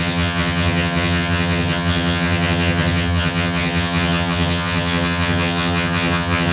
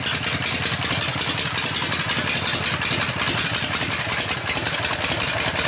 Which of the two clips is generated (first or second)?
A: first